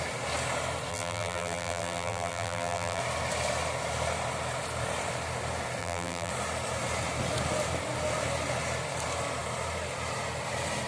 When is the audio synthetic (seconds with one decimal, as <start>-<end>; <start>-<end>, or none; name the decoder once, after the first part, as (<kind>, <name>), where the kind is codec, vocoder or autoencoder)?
0.9-3.0 (vocoder, BigVGAN v2); 5.8-6.3